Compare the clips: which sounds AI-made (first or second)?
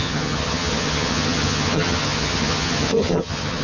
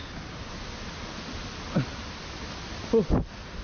first